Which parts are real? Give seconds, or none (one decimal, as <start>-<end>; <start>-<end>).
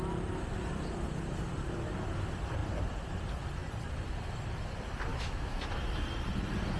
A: 0.0-5.1; 5.6-6.8